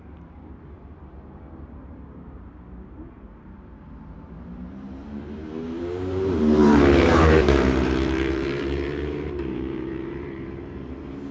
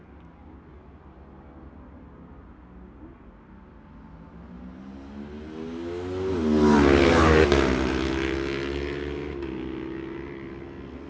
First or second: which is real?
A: second